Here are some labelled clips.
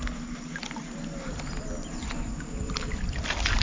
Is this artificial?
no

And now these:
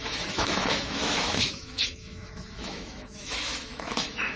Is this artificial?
yes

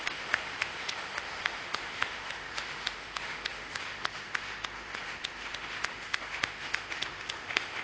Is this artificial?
yes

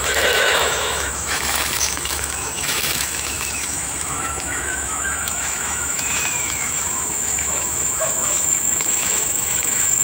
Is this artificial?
yes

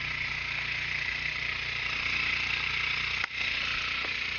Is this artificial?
no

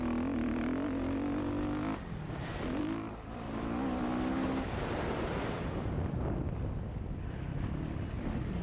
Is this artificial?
no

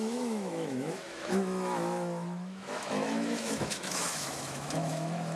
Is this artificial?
yes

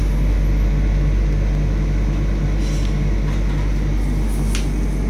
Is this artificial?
no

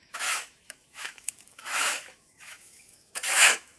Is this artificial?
yes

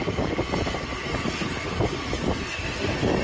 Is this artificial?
no